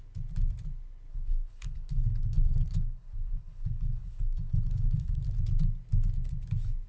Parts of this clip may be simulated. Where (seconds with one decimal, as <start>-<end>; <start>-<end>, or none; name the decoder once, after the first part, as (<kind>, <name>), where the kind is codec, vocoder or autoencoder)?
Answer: 1.1-5.2 (codec, HILCodec)